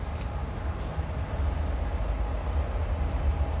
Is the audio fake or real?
real